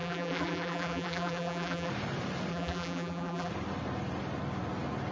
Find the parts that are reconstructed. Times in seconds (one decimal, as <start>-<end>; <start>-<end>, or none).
0.0-1.9; 2.5-3.5